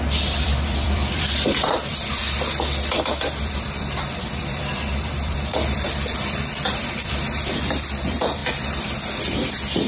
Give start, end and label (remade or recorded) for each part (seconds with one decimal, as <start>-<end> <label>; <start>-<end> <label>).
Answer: 0.0-2.2 remade; 2.2-3.4 recorded; 3.4-8.4 remade; 8.4-9.5 recorded; 9.5-9.9 remade